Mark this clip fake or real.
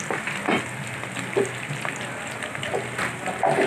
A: real